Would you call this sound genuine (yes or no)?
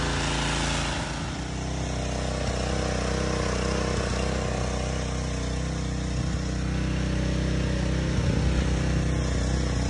yes